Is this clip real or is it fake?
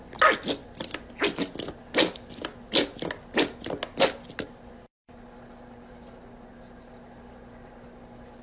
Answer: real